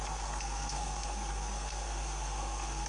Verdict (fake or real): fake